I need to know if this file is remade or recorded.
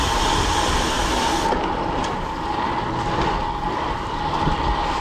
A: remade